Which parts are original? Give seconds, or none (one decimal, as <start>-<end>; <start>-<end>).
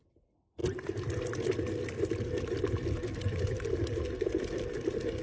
0.0-5.2